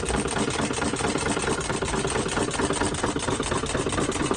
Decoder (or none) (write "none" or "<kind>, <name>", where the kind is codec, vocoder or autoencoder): none